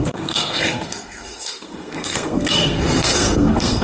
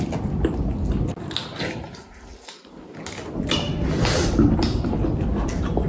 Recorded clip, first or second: second